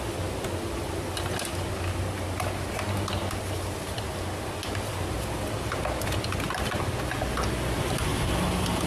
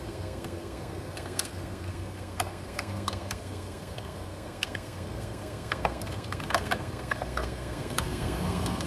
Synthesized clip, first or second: second